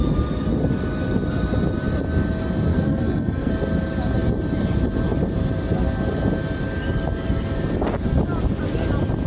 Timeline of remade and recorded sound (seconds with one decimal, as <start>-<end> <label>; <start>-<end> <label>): 0.0-2.7 recorded; 2.7-3.5 remade; 3.5-9.3 recorded